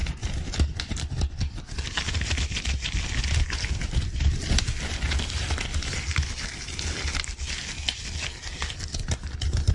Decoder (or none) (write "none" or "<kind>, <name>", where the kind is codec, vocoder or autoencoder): none